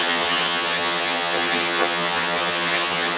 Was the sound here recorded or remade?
remade